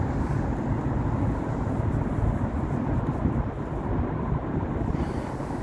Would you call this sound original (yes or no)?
yes